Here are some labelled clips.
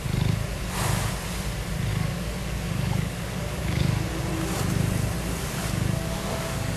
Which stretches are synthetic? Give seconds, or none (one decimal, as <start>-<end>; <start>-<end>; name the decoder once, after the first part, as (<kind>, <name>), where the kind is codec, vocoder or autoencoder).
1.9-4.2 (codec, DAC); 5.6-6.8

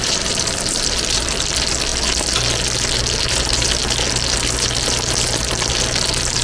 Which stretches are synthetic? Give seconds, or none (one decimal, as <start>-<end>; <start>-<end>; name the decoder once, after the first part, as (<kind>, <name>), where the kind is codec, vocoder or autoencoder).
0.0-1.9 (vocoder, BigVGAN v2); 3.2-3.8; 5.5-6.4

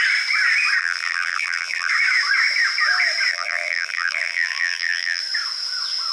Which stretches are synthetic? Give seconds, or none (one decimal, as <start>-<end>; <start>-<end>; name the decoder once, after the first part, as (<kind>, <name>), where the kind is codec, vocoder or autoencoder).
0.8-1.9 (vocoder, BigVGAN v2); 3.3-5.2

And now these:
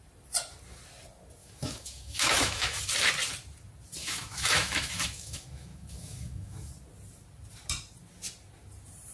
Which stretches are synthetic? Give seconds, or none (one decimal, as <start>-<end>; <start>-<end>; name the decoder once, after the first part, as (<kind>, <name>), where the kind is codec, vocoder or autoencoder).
1.4-2.8 (autoencoder, DAC-VAE); 4.0-6.7

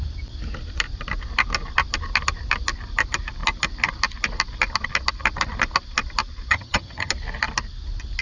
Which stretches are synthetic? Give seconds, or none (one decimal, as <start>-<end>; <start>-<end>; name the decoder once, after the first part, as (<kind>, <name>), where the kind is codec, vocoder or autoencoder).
6.5-7.1 (vocoder, HiFi-GAN)

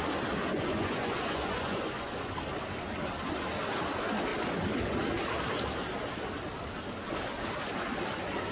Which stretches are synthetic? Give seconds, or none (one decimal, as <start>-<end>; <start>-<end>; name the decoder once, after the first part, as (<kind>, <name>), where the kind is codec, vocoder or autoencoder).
0.5-2.3 (vocoder, Vocos)